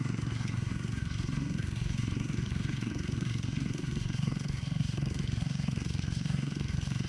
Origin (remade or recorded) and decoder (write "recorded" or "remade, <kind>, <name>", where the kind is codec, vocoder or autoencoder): remade, codec, SNAC